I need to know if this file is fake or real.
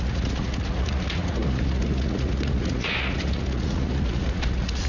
fake